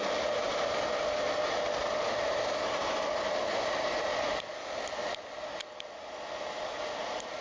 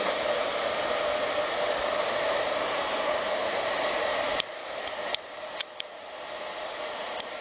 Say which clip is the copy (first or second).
second